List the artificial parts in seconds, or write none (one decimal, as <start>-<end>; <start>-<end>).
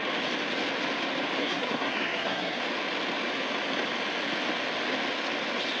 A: 1.4-2.6